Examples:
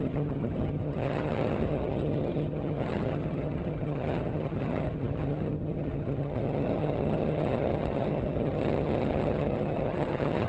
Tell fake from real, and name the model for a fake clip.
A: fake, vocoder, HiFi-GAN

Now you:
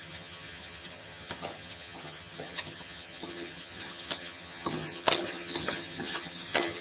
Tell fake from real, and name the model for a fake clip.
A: fake, vocoder, HiFi-GAN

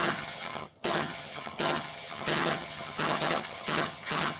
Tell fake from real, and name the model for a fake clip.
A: fake, vocoder, HiFi-GAN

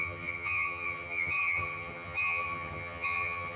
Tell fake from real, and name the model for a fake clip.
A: fake, vocoder, HiFi-GAN